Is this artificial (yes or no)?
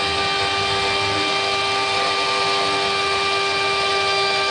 no